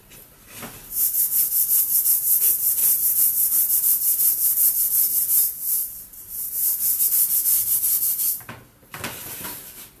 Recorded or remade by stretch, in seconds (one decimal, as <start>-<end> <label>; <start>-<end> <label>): 0.0-2.8 recorded; 2.8-3.7 remade; 3.7-5.4 recorded; 5.4-7.0 remade; 7.0-7.6 recorded; 7.6-10.0 remade